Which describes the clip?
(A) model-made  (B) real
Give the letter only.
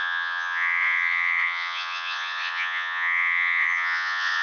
A